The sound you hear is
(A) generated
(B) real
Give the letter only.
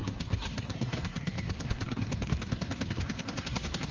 A